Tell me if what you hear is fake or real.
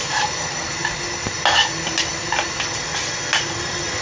real